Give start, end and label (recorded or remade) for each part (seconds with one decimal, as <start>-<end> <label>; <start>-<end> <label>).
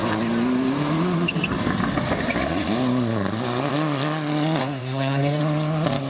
0.0-4.6 recorded; 4.6-5.4 remade; 5.4-6.1 recorded